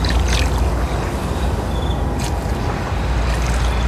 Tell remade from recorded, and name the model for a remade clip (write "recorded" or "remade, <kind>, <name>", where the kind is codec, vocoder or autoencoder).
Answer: recorded